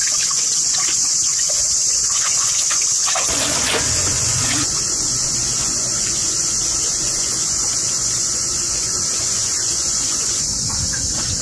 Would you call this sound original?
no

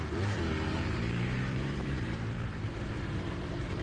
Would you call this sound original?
no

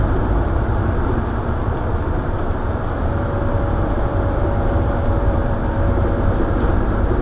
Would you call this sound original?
no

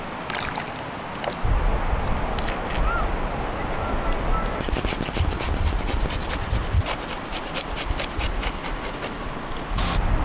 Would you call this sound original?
yes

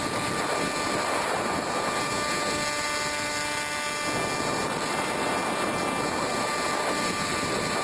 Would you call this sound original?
yes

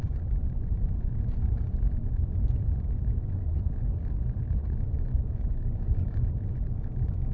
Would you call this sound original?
no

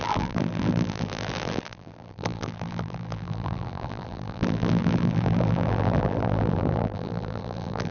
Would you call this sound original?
no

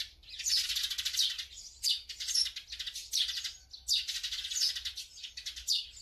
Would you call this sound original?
yes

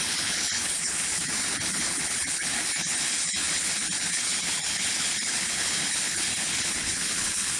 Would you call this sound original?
no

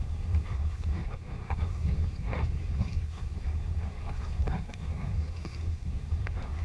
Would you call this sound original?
no